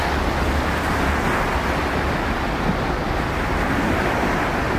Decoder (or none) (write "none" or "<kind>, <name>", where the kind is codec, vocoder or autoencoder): none